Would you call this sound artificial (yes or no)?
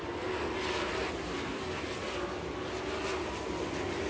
no